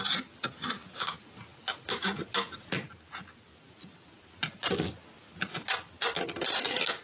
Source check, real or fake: real